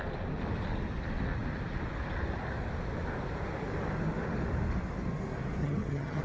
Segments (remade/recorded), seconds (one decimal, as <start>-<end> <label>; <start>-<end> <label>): 0.0-5.6 recorded; 5.6-6.2 remade